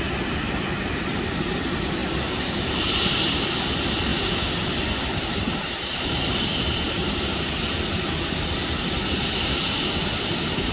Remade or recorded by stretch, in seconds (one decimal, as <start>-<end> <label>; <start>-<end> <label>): 0.0-2.0 remade; 2.0-2.7 recorded; 2.7-4.1 remade; 4.1-5.2 recorded; 5.2-10.7 remade